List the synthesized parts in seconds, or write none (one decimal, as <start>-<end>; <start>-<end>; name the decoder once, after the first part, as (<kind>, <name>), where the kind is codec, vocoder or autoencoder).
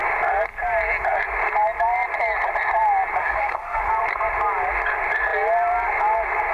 3.2-3.8 (autoencoder, DAC-VAE)